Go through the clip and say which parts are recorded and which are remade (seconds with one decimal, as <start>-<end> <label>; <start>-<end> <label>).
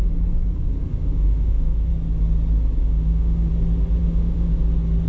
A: 0.0-0.9 recorded; 0.9-1.9 remade; 1.9-2.8 recorded; 2.8-3.5 remade; 3.5-4.0 recorded; 4.0-4.5 remade; 4.5-5.1 recorded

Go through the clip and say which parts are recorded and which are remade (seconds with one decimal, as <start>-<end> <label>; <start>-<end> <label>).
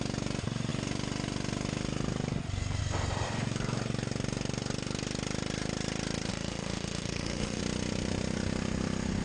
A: 0.0-6.3 recorded; 6.3-7.6 remade; 7.6-9.2 recorded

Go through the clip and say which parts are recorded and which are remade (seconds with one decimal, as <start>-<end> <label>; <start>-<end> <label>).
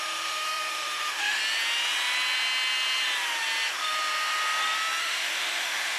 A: 0.0-1.4 remade; 1.4-5.0 recorded; 5.0-6.0 remade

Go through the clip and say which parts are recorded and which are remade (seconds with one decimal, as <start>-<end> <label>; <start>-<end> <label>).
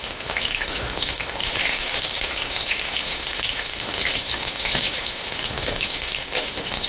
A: 0.0-6.9 remade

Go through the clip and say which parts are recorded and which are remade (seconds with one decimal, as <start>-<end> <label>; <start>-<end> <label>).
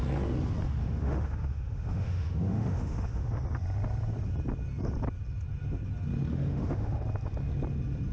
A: 0.0-0.8 recorded; 0.8-3.3 remade; 3.3-6.3 recorded; 6.3-7.0 remade; 7.0-8.1 recorded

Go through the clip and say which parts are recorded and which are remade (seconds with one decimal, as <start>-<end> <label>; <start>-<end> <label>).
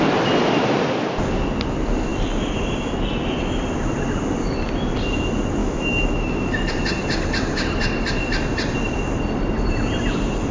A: 0.0-5.6 recorded; 5.6-6.7 remade; 6.7-10.5 recorded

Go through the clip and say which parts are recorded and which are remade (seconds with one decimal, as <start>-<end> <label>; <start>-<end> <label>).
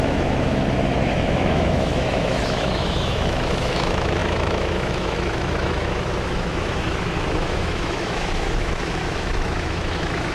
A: 0.0-10.3 remade